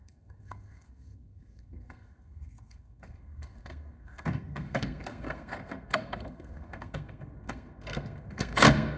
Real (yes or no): no